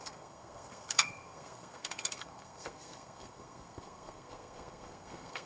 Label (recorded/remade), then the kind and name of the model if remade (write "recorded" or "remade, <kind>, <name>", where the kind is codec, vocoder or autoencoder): remade, codec, SNAC